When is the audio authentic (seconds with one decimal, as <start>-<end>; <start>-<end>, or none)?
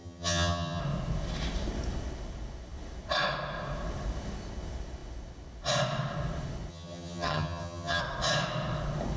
0.8-6.7; 8.0-9.2